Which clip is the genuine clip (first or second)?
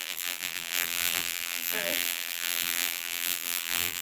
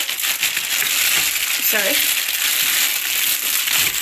second